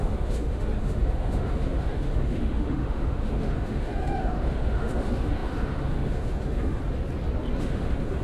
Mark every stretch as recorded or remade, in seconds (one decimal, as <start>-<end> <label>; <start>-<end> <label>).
0.0-6.8 remade; 6.8-7.6 recorded; 7.6-8.2 remade